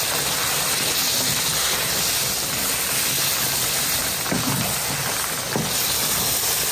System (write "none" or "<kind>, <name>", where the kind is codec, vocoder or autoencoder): none